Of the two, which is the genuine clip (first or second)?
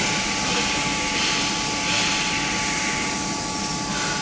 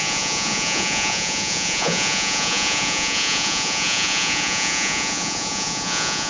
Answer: first